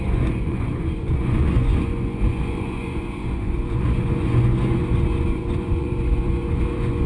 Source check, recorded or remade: remade